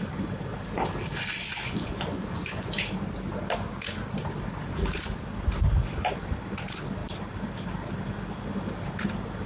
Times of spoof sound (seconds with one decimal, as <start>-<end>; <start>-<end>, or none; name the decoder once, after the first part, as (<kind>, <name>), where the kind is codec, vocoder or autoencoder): 1.5-2.7 (vocoder, Vocos)